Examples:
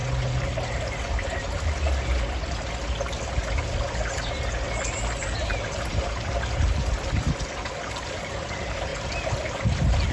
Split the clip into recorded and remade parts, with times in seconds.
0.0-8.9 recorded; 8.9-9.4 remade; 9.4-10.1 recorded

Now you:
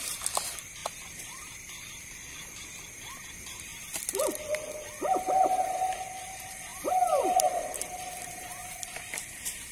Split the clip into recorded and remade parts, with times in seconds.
0.0-9.7 remade

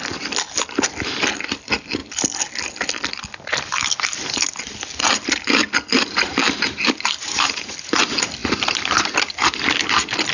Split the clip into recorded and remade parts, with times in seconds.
0.0-2.0 remade; 2.0-5.0 recorded; 5.0-8.4 remade; 8.4-9.1 recorded; 9.1-10.3 remade

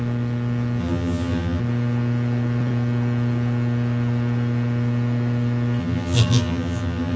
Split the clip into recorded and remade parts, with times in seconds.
0.0-0.8 recorded; 0.8-1.6 remade; 1.6-5.8 recorded; 5.8-7.2 remade